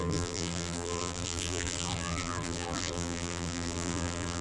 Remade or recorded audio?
remade